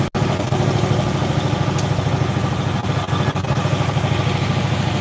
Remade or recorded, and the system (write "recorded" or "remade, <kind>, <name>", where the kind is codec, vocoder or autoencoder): recorded